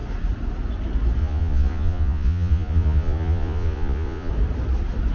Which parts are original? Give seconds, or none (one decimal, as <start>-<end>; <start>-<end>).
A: 0.0-1.2; 4.3-5.1